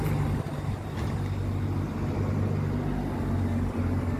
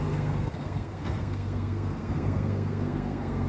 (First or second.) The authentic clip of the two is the first